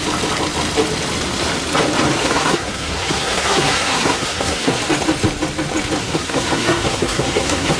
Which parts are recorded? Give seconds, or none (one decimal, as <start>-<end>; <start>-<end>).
0.0-2.2; 4.8-6.0